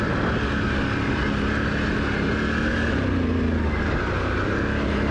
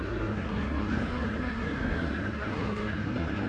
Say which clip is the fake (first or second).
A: second